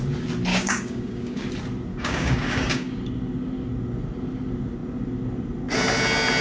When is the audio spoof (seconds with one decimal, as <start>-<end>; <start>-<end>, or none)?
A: 0.5-1.4; 1.9-3.0